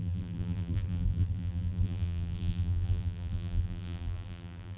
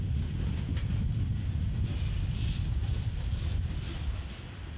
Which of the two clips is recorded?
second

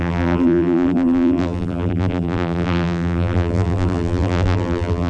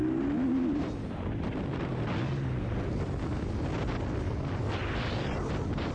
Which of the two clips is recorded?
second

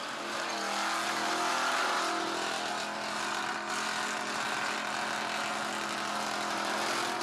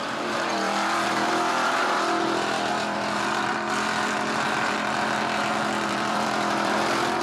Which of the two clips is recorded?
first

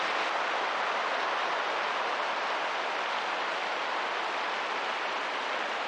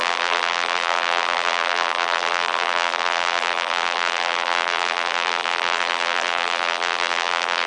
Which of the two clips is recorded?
first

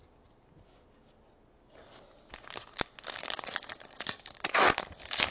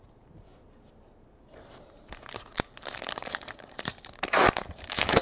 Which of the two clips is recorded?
first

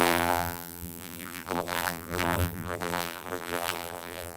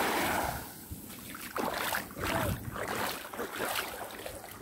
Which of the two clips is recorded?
second